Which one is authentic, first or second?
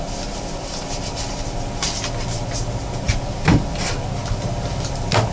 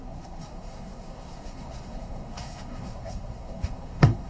first